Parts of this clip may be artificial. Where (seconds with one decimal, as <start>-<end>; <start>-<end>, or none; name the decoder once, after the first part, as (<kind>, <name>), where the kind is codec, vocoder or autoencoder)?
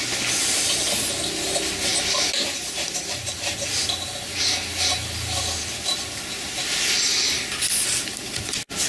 none